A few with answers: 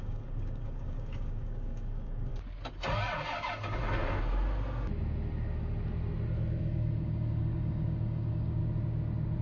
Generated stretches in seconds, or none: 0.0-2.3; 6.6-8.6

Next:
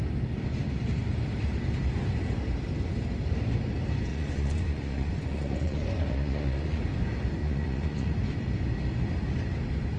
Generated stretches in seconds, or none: 4.1-6.8; 7.4-8.1

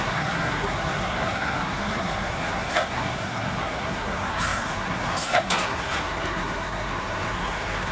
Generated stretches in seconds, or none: 0.0-7.9

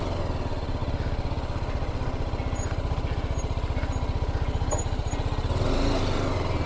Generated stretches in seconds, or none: none

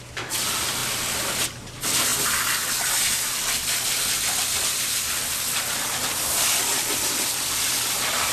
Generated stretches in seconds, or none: none

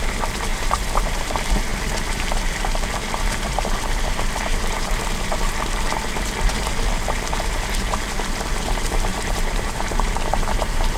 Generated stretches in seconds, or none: 0.5-1.2; 4.5-5.3; 9.1-11.0

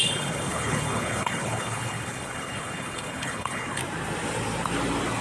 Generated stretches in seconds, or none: 0.0-3.8

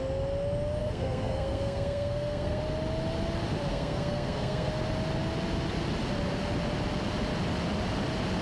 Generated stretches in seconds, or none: 0.8-2.6; 3.7-4.7